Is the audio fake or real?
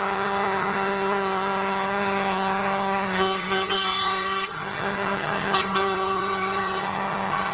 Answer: fake